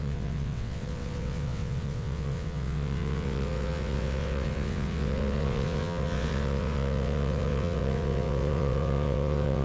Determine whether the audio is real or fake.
fake